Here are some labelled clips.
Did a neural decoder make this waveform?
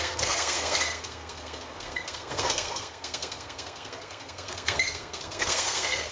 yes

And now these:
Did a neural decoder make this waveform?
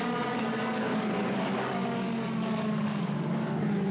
yes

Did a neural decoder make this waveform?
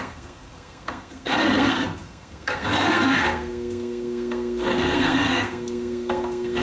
yes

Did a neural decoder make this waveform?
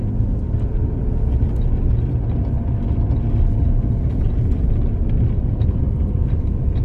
no